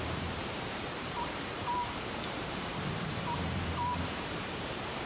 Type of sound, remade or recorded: remade